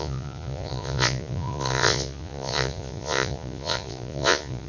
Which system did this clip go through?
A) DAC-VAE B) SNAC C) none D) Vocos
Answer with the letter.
D